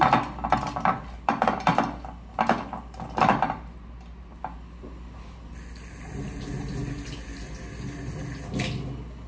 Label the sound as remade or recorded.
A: recorded